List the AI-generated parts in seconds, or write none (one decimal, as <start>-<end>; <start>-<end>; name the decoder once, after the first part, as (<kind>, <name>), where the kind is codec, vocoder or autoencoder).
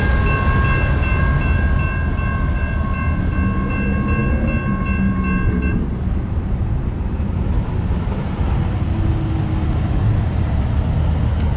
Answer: none